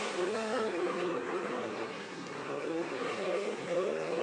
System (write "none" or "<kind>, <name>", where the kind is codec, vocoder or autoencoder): codec, SNAC